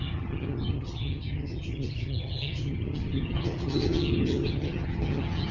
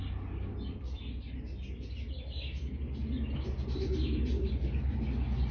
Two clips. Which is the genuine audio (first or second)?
second